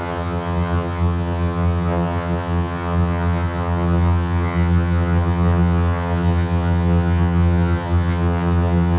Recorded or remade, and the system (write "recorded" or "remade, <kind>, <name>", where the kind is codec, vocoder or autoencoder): remade, vocoder, HiFi-GAN